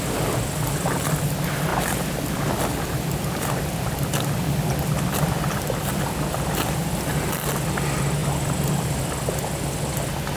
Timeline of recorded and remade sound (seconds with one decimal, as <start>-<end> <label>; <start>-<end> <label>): 0.0-1.7 recorded; 1.7-6.0 remade; 6.0-8.2 recorded; 8.2-9.0 remade; 9.0-10.4 recorded